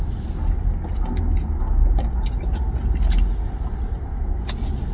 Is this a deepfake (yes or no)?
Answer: no